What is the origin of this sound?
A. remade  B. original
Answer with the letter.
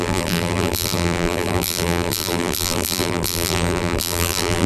A